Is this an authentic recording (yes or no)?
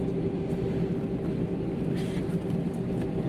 yes